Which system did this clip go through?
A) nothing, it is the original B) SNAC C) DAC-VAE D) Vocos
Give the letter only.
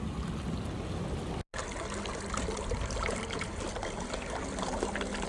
A